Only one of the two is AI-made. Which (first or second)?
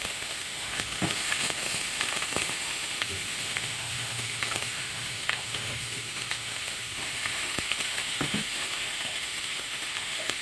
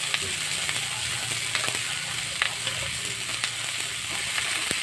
first